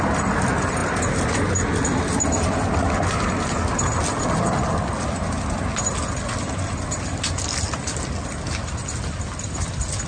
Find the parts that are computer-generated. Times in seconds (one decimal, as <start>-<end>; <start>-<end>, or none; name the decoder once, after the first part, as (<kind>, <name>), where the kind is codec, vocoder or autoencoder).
none